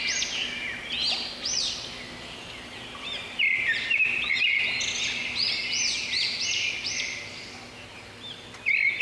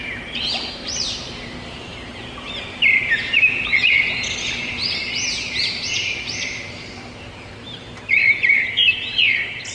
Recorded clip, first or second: first